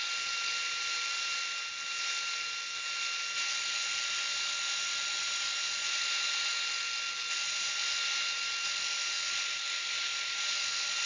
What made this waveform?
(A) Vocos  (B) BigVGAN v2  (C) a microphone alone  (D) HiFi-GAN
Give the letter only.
C